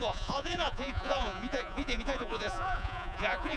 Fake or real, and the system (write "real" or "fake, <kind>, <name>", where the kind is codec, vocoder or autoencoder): fake, vocoder, Vocos